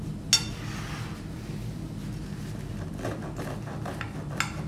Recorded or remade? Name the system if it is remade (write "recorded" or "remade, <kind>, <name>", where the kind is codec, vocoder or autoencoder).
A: recorded